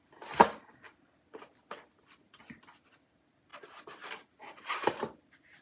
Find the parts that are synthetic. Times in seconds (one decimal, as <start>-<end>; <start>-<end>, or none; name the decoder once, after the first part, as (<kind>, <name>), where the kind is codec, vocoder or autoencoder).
none